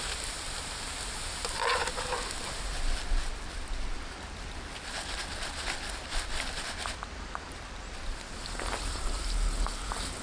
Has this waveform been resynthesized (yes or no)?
no